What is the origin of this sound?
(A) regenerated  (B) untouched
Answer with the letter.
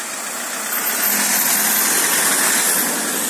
B